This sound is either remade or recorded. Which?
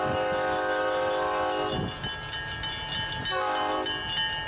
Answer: recorded